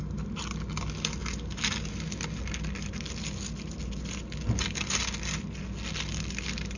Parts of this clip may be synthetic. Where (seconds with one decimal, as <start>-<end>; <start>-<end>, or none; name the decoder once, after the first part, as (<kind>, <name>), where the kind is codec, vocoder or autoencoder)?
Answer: none